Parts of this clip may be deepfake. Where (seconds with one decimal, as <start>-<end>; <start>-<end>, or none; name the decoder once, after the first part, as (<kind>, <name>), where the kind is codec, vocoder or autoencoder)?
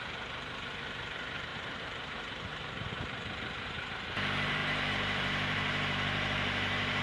0.0-7.0 (vocoder, BigVGAN v2)